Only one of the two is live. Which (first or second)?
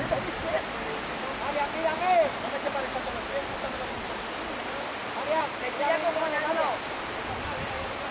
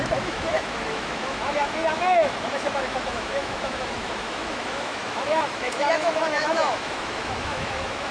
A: first